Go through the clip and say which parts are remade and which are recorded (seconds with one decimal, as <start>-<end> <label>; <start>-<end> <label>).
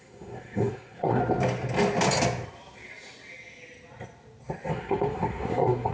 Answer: 0.0-1.2 remade; 1.2-4.7 recorded; 4.7-5.9 remade